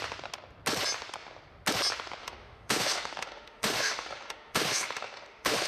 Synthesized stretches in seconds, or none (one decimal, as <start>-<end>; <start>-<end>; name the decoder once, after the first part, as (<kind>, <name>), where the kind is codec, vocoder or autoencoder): 2.2-5.7 (autoencoder, DAC-VAE)